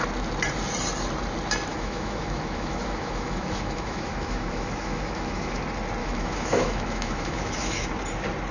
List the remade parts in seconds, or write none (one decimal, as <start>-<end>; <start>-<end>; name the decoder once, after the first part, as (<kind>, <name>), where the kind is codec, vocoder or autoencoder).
1.7-5.6 (autoencoder, DAC-VAE); 6.0-7.9